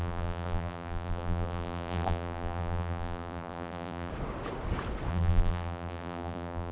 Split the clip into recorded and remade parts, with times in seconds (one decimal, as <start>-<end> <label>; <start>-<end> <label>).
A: 0.0-4.1 remade; 4.1-5.1 recorded; 5.1-6.7 remade